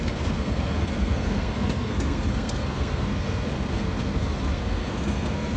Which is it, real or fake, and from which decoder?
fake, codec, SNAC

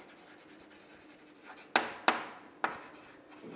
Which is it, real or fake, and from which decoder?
real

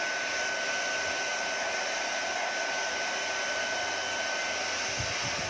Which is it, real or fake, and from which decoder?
real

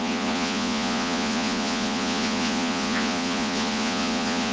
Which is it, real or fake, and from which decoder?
fake, vocoder, Vocos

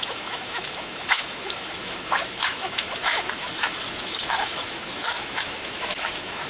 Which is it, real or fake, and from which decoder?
fake, autoencoder, DAC-VAE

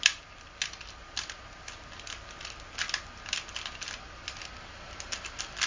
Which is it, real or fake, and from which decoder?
real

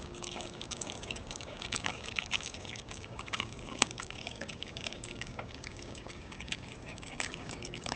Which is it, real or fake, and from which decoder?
fake, codec, DAC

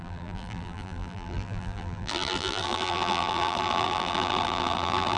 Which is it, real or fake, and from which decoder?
fake, vocoder, BigVGAN v2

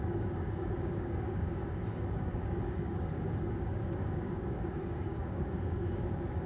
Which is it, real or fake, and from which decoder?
fake, codec, DAC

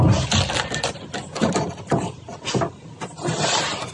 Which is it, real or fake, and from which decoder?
real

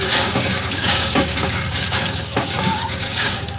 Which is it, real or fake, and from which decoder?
fake, codec, DAC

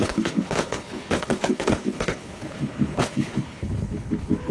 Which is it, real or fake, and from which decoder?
fake, codec, HILCodec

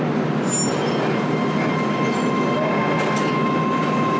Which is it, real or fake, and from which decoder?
real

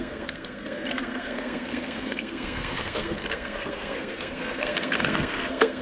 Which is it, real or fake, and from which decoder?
fake, codec, SNAC